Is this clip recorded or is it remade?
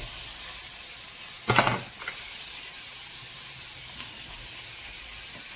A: recorded